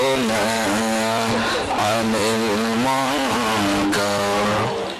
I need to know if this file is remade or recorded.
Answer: recorded